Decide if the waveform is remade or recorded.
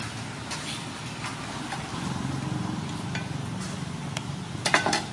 recorded